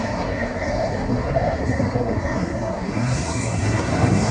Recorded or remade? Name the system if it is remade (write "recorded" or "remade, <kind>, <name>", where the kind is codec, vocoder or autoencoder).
remade, codec, SNAC